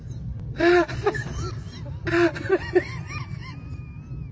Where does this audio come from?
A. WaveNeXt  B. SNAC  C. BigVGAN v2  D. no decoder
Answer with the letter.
D